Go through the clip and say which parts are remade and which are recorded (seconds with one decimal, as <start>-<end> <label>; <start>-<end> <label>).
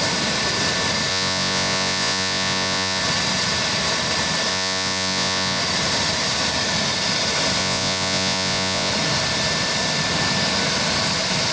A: 0.0-1.1 recorded; 1.1-3.0 remade; 3.0-4.5 recorded; 4.5-5.6 remade; 5.6-7.6 recorded; 7.6-8.9 remade; 8.9-11.5 recorded